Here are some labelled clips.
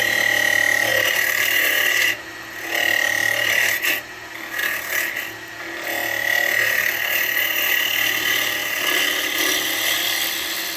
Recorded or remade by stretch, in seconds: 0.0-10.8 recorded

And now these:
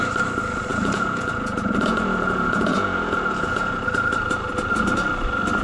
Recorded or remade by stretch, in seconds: 0.0-0.7 recorded; 0.7-3.8 remade; 3.8-5.6 recorded